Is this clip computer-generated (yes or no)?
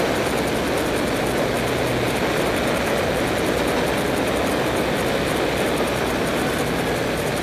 no